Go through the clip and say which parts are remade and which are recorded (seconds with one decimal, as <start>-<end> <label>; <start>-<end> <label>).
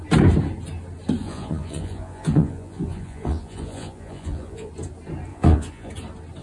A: 0.0-1.2 recorded; 1.2-4.7 remade; 4.7-5.3 recorded; 5.3-5.9 remade; 5.9-6.4 recorded